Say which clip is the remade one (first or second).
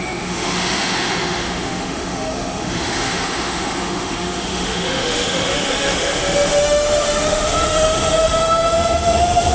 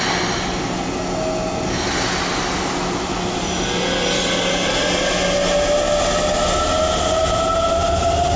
first